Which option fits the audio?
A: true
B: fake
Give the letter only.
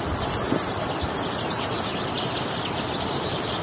A